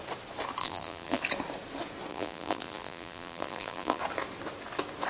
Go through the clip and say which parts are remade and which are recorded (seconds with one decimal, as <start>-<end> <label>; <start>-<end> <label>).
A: 0.0-0.6 recorded; 0.6-1.2 remade; 1.2-2.1 recorded; 2.1-4.0 remade; 4.0-5.1 recorded